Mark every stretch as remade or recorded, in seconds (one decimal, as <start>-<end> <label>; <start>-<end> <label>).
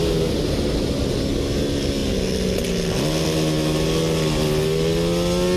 0.0-5.6 recorded